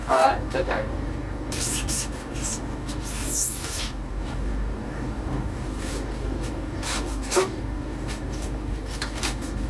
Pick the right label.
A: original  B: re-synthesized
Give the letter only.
B